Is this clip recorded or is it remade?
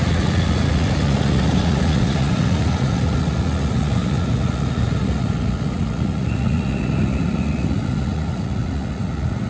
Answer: remade